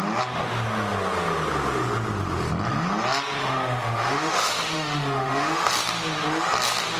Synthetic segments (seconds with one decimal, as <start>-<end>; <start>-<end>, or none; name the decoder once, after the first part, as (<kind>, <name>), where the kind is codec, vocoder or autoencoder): 3.4-5.7 (autoencoder, DAC-VAE)